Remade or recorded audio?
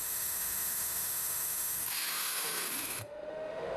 remade